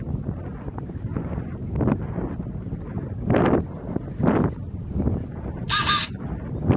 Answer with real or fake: real